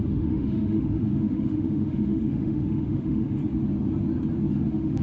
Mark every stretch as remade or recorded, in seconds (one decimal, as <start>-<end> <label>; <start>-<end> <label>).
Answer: 0.0-3.4 remade; 3.4-4.5 recorded; 4.5-5.0 remade